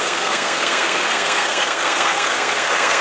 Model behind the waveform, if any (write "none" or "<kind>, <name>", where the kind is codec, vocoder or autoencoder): codec, SNAC